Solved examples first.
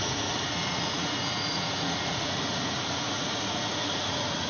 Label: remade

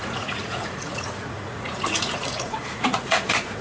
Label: remade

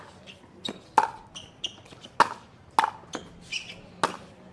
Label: recorded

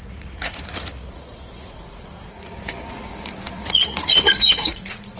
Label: remade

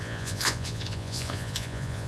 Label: remade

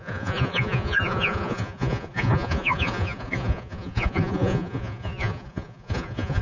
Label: remade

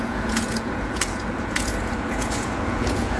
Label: remade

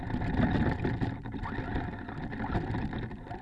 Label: recorded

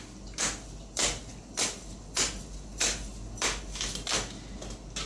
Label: recorded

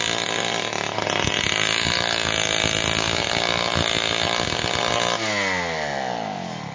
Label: recorded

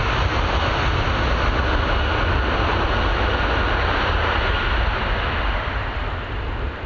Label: recorded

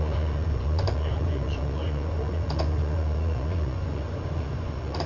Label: remade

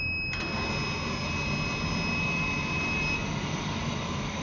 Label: recorded